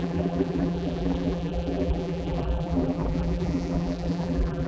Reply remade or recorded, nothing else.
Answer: remade